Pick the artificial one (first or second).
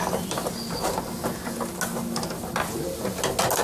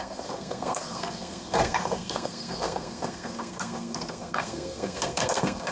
second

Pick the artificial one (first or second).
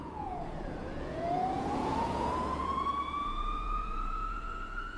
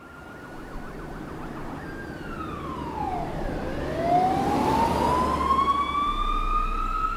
first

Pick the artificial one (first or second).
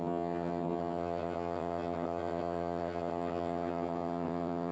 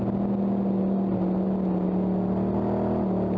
first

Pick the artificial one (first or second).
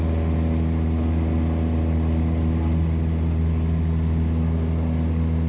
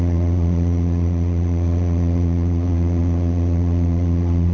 second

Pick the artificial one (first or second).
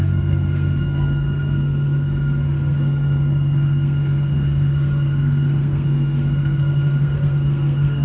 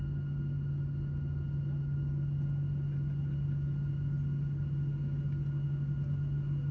first